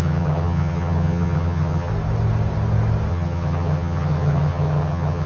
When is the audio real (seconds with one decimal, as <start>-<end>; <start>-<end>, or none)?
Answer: 1.9-3.1

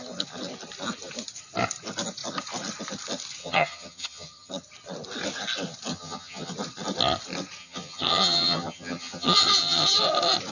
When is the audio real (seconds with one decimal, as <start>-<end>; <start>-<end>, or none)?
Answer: 0.0-3.4; 4.5-5.9; 6.5-7.6; 10.0-10.5